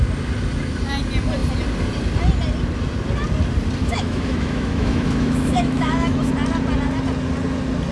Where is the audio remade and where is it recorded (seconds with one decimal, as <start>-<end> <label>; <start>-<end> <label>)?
0.0-3.8 recorded; 3.8-6.3 remade; 6.3-7.9 recorded